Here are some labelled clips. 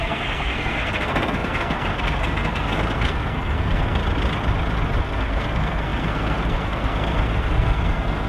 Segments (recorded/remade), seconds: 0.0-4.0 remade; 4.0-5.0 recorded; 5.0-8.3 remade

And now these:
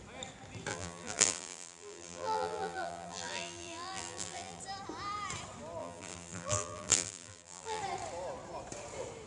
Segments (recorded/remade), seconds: 0.0-0.7 recorded; 0.7-4.6 remade; 4.6-5.8 recorded; 5.8-7.8 remade; 7.8-9.3 recorded

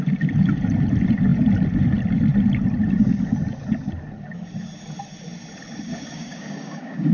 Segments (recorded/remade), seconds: 0.0-5.9 recorded; 5.9-7.1 remade

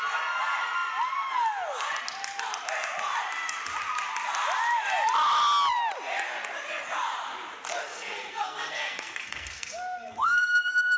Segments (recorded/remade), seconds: 0.0-7.8 recorded; 7.8-11.0 remade

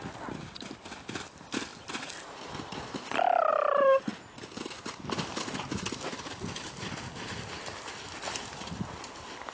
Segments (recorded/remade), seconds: 0.0-1.7 remade; 1.7-3.5 recorded; 3.5-4.1 remade; 4.1-6.6 recorded; 6.6-9.5 remade

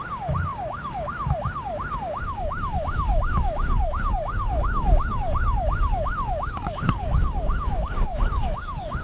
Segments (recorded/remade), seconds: 0.0-9.0 remade